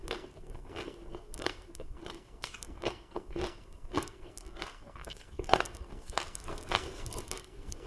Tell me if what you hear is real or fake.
fake